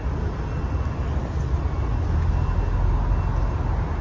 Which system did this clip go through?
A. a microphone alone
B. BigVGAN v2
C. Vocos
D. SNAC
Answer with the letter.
A